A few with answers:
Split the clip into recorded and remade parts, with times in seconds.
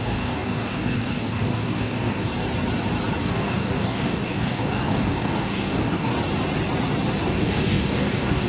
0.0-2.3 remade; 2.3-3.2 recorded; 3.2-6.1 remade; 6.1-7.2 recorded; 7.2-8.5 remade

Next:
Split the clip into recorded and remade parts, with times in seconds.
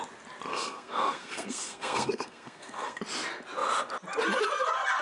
0.0-0.5 recorded; 0.5-3.0 remade; 3.0-5.0 recorded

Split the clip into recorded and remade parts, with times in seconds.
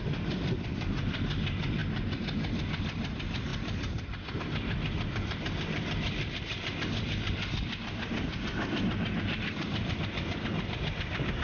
0.0-1.8 remade; 1.8-2.6 recorded; 2.6-8.3 remade; 8.3-9.2 recorded; 9.2-11.4 remade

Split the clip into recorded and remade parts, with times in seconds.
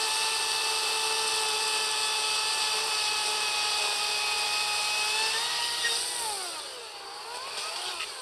0.0-8.2 recorded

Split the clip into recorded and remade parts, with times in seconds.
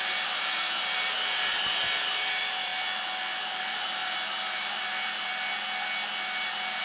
0.0-2.7 remade; 2.7-3.6 recorded; 3.6-5.3 remade; 5.3-6.8 recorded